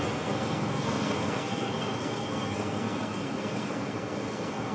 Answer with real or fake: fake